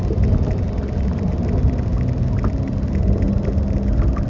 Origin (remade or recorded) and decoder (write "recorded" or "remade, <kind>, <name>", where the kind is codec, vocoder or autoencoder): recorded